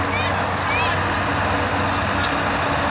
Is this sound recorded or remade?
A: recorded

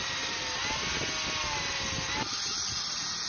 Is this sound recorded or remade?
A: recorded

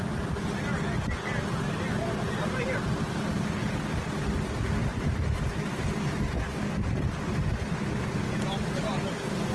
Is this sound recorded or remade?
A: recorded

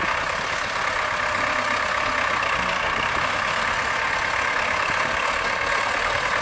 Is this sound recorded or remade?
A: recorded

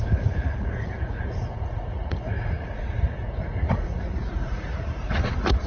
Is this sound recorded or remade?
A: remade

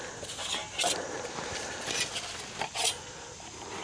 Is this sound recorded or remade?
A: recorded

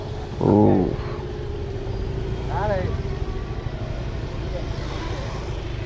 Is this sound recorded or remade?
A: recorded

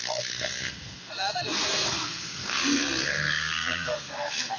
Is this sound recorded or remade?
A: remade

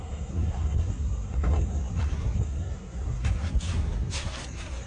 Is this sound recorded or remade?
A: remade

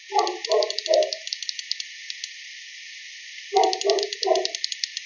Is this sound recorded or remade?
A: remade